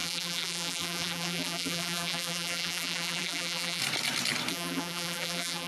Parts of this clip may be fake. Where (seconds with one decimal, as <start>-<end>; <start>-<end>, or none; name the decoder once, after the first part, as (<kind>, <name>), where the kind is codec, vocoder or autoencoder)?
0.0-3.8 (vocoder, BigVGAN v2); 4.5-5.7